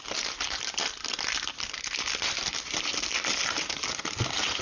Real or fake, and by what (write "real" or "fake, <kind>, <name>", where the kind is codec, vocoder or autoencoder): real